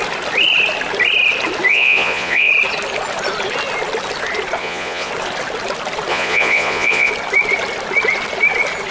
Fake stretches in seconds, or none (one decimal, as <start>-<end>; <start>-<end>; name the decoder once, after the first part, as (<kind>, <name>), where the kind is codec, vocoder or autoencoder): 1.7-2.5 (vocoder, Vocos); 4.6-5.1; 6.1-7.1

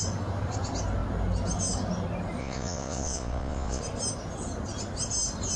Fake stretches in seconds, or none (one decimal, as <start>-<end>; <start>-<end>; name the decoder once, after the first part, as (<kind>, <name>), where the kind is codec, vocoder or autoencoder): 2.4-3.8 (vocoder, Vocos)